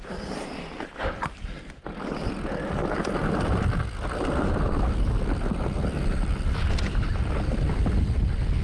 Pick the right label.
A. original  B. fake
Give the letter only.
A